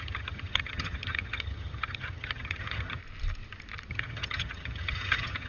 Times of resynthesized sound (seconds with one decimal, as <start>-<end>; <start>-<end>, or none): 0.0-3.0; 3.9-5.5